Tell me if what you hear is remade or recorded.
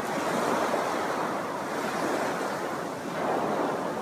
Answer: recorded